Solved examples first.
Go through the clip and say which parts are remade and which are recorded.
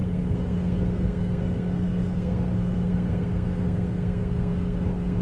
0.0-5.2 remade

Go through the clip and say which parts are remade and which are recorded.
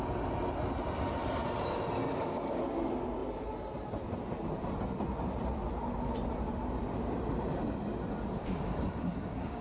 0.0-2.1 recorded; 2.1-2.6 remade; 2.6-8.4 recorded; 8.4-9.6 remade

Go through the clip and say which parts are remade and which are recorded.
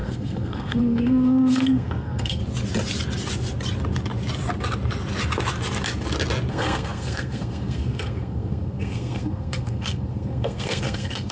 0.0-2.4 remade; 2.4-6.5 recorded; 6.5-11.3 remade